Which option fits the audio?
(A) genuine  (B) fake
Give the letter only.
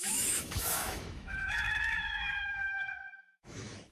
B